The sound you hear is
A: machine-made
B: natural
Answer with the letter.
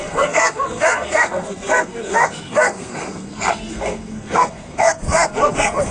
A